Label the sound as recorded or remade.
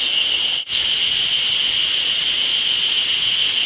remade